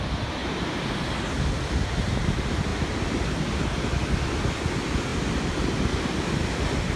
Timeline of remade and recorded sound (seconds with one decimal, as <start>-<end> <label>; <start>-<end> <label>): 0.0-0.4 recorded; 0.4-1.1 remade; 1.1-7.0 recorded